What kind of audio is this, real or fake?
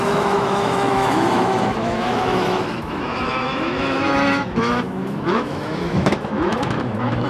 fake